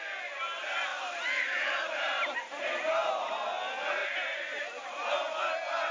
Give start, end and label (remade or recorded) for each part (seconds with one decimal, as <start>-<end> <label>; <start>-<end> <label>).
0.0-0.9 recorded; 0.9-2.7 remade; 2.7-4.0 recorded; 4.0-5.1 remade; 5.1-5.9 recorded